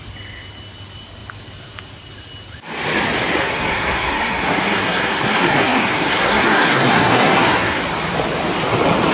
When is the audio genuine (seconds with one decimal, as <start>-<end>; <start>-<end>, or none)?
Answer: 0.0-3.4; 7.8-9.1